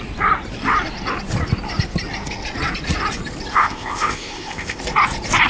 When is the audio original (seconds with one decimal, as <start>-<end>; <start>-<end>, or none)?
0.0-3.5; 4.8-5.5